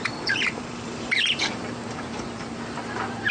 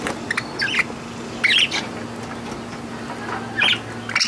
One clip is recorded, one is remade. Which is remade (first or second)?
first